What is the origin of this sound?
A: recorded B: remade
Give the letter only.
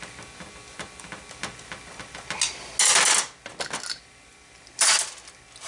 A